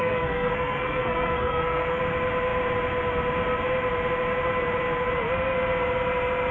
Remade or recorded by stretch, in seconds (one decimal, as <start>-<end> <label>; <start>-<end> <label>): 0.0-2.0 remade; 2.0-6.5 recorded